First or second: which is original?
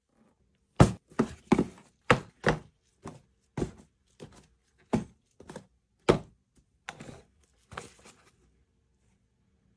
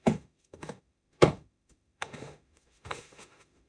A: first